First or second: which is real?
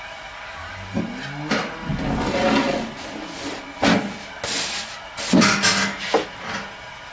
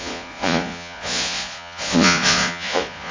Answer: first